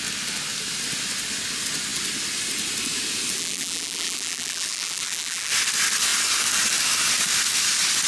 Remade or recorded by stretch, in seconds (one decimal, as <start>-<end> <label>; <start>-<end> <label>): 0.0-3.4 recorded; 3.4-5.5 remade; 5.5-8.1 recorded